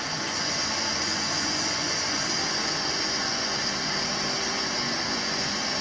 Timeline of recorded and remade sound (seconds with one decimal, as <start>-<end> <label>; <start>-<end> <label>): 0.0-3.6 remade; 3.6-4.5 recorded; 4.5-5.8 remade